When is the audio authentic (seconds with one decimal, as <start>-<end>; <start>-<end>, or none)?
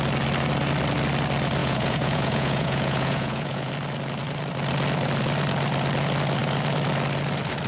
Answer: 0.0-1.6; 3.7-7.7